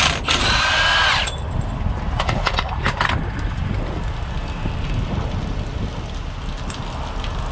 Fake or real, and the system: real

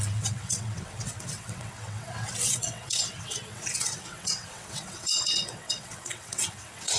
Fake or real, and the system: fake, vocoder, WaveNeXt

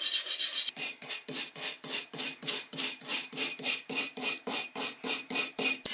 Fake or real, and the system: fake, vocoder, BigVGAN v2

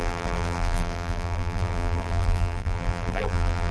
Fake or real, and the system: fake, vocoder, BigVGAN v2